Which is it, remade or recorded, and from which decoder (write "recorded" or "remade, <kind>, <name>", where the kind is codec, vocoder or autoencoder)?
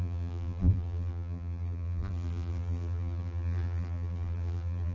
remade, vocoder, BigVGAN v2